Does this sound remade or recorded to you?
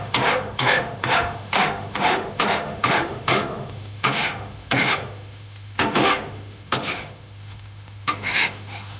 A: remade